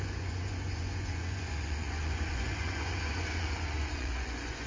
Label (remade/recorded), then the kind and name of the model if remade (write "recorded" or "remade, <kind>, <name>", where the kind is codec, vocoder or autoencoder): remade, vocoder, Vocos